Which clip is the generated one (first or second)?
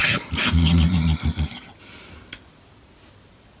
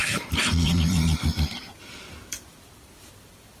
second